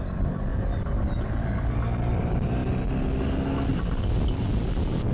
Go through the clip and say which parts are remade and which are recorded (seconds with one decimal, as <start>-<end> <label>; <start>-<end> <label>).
0.0-0.5 remade; 0.5-1.2 recorded; 1.2-2.6 remade; 2.6-3.7 recorded; 3.7-5.1 remade